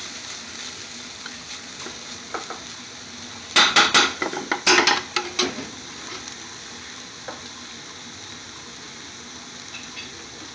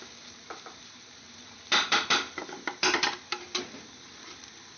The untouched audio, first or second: first